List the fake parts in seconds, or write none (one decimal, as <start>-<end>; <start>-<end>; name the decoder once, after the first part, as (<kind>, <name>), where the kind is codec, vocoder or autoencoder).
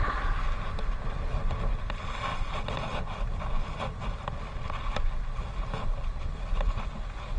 none